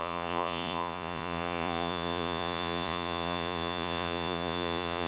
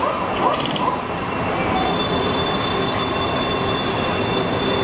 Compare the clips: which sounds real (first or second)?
second